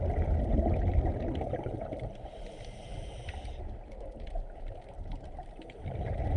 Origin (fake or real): real